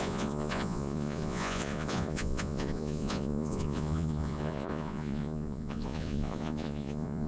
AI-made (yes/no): yes